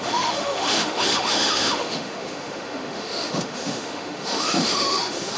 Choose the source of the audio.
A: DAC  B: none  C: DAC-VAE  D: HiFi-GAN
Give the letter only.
C